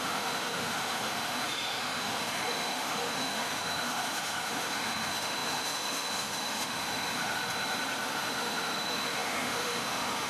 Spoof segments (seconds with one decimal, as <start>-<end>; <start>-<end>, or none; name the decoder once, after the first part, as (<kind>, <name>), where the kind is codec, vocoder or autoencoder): 0.0-7.4 (autoencoder, DAC-VAE); 8.1-10.3